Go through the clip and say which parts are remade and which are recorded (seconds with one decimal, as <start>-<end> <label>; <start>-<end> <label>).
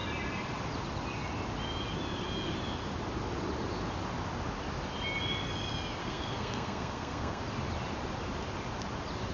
0.0-6.0 recorded; 6.0-7.4 remade; 7.4-9.3 recorded